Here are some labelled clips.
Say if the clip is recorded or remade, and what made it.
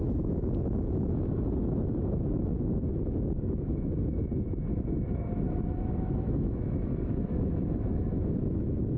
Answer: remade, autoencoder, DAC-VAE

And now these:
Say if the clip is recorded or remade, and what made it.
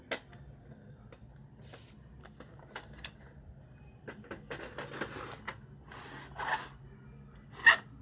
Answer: recorded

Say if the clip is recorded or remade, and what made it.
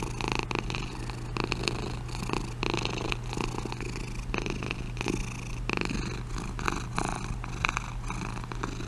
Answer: recorded